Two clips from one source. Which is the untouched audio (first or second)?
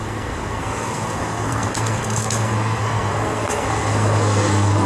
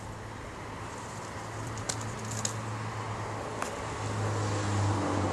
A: second